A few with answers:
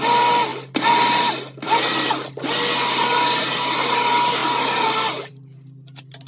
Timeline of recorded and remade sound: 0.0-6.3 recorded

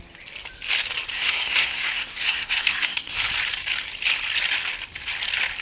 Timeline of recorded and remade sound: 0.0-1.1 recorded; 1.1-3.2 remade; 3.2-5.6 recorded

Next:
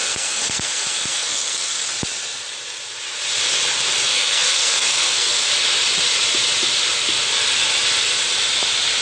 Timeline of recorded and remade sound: 0.0-1.9 remade; 1.9-4.1 recorded; 4.1-5.5 remade; 5.5-9.0 recorded

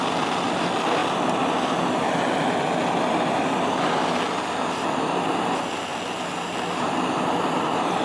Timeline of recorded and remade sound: 0.0-8.0 recorded